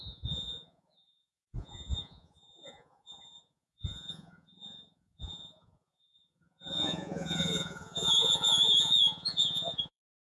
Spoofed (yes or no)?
yes